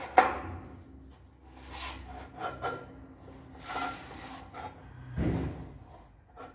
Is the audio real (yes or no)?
yes